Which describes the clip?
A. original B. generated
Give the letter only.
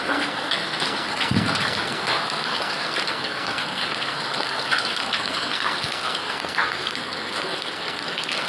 B